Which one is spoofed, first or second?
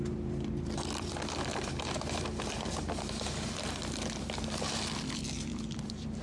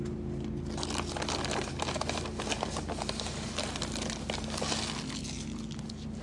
first